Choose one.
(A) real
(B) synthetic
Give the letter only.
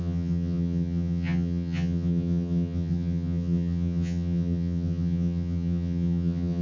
B